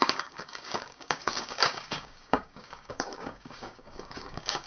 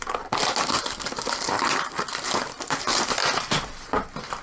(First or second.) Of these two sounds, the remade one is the first